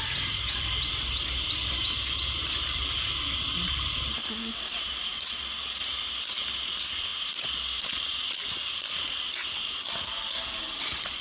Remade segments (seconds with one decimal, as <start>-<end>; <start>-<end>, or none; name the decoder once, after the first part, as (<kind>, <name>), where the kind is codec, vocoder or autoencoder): 0.0-11.2 (vocoder, BigVGAN v2)